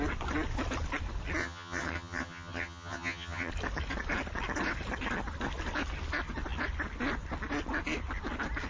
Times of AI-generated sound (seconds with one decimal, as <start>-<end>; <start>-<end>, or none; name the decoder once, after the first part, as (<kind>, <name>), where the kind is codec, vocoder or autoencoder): 1.4-3.5 (vocoder, HiFi-GAN)